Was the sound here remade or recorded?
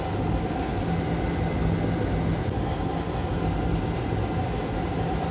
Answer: recorded